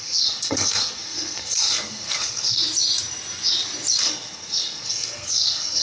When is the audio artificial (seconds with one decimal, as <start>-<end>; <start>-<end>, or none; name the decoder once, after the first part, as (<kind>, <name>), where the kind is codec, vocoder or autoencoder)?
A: 0.0-2.6 (codec, SNAC); 4.0-5.8